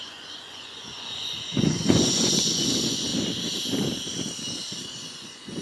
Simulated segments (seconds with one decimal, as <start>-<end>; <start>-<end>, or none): 0.0-3.1; 4.8-5.6